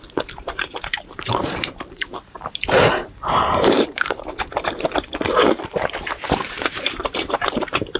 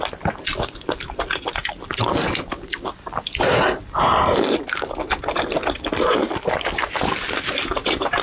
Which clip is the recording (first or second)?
second